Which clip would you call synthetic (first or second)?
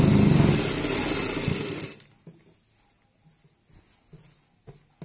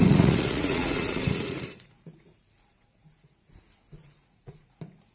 second